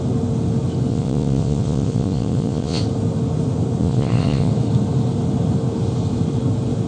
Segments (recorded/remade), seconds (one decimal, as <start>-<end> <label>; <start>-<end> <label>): 0.0-0.9 recorded; 0.9-2.8 remade; 2.8-3.8 recorded; 3.8-4.5 remade; 4.5-6.9 recorded